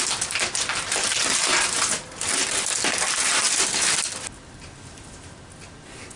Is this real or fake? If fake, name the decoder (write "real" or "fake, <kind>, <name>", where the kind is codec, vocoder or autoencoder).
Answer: real